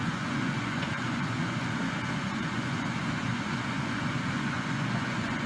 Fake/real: fake